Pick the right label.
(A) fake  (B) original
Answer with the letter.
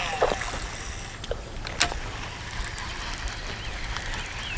B